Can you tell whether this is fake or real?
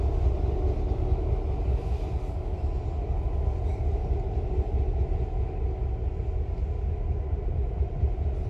real